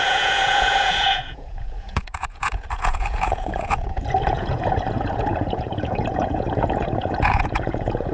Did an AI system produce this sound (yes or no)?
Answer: yes